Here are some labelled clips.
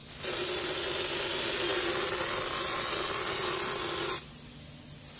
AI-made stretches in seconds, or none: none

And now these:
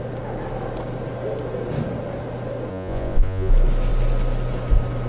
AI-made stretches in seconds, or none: 2.7-3.5 (vocoder, Vocos)

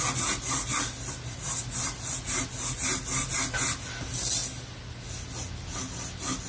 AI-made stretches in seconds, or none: none

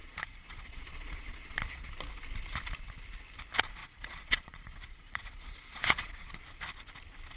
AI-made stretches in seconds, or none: 0.0-1.9 (vocoder, Vocos); 3.8-6.3

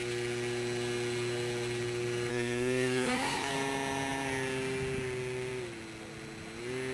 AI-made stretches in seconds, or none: 2.3-3.5 (codec, SNAC)

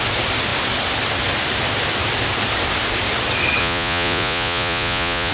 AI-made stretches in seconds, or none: 3.6-5.3 (vocoder, Vocos)